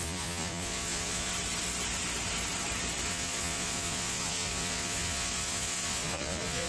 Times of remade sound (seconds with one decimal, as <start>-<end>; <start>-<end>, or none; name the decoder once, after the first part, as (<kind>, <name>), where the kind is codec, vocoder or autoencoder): 0.0-1.3 (vocoder, Vocos); 3.1-6.7